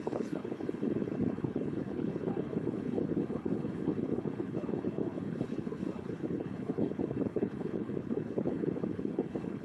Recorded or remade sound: remade